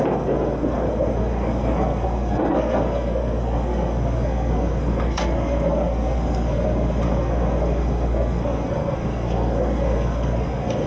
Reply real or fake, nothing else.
fake